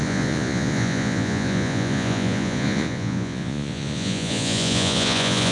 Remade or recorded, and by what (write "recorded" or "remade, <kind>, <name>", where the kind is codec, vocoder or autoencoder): remade, vocoder, Vocos